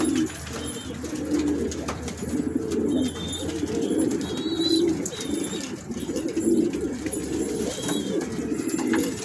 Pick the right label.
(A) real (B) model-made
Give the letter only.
A